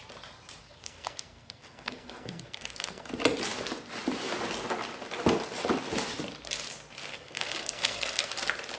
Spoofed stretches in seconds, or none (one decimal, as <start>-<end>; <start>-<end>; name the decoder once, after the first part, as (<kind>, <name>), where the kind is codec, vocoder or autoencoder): 0.6-3.1 (codec, SNAC); 7.1-8.3